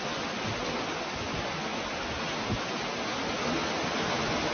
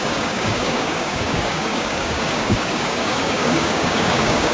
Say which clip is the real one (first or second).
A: first